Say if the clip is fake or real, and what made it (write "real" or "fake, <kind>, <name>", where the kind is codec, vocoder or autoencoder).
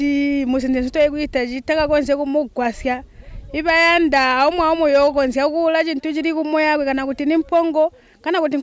real